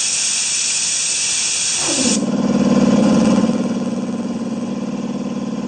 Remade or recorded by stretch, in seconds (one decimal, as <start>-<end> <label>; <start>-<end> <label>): 0.0-3.0 recorded; 3.0-4.7 remade; 4.7-5.7 recorded